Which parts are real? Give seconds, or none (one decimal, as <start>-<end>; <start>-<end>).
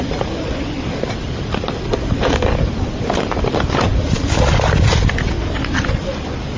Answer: 0.0-6.6